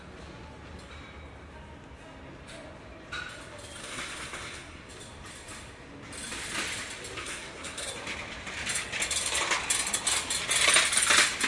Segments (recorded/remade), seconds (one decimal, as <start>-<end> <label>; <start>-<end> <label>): 0.0-3.8 recorded; 3.8-4.9 remade; 4.9-7.2 recorded; 7.2-7.9 remade; 7.9-11.5 recorded